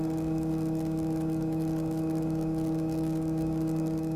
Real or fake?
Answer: fake